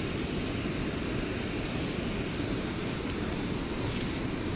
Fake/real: real